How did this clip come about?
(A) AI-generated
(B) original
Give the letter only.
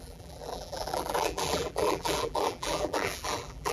A